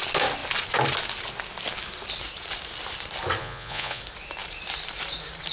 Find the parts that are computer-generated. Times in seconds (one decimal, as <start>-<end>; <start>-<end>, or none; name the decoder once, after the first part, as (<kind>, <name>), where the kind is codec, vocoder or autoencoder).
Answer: 3.4-4.0 (vocoder, Vocos)